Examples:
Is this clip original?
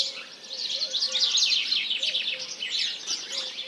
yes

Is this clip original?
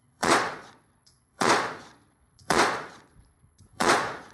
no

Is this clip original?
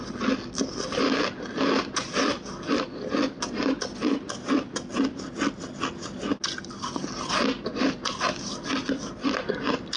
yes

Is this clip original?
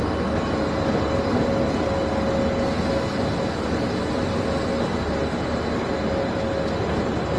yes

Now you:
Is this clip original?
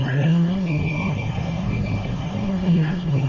no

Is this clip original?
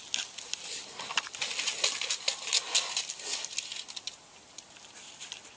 yes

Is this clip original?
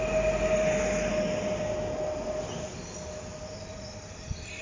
yes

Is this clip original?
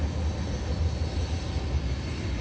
yes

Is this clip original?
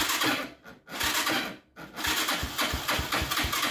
yes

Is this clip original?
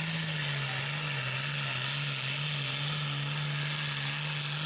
yes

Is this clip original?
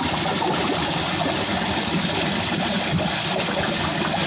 yes